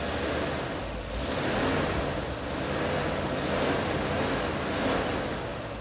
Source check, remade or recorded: recorded